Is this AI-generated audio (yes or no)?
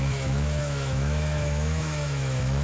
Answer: yes